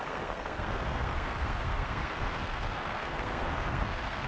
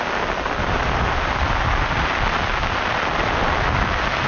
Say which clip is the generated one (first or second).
first